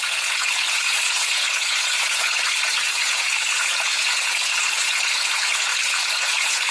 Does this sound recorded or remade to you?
remade